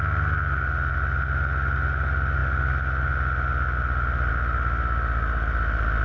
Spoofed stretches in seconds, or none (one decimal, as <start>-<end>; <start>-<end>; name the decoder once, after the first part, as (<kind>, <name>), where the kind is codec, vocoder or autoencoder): none